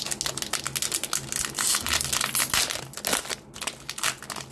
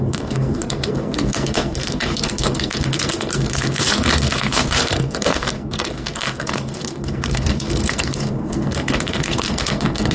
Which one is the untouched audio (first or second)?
first